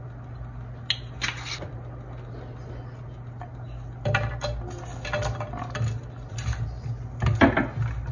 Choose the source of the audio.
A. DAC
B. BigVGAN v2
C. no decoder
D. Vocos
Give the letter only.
C